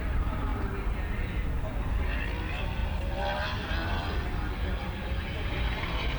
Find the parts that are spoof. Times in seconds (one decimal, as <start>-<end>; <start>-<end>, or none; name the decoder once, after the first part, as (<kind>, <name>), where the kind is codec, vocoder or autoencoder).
0.0-0.5 (vocoder, BigVGAN v2); 1.6-6.2